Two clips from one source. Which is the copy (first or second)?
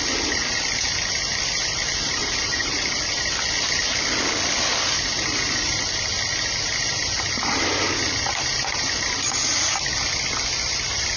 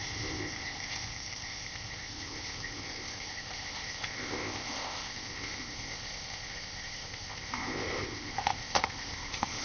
second